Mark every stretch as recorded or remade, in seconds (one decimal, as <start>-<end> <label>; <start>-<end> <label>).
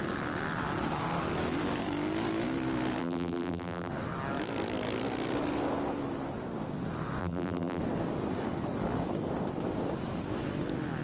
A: 0.0-3.0 recorded; 3.0-3.9 remade; 3.9-7.2 recorded; 7.2-7.8 remade; 7.8-11.0 recorded